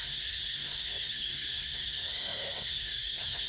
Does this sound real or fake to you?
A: fake